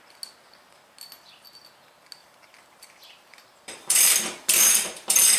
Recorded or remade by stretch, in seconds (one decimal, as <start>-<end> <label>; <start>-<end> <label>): 0.0-2.2 recorded; 2.2-5.4 remade